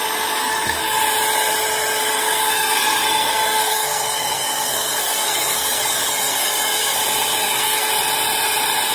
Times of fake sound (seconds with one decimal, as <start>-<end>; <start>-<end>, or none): 0.4-1.0; 2.0-7.0; 7.4-7.9